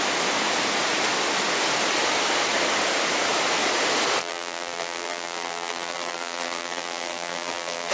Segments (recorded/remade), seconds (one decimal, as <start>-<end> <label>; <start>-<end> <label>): 0.0-4.2 recorded; 4.2-7.9 remade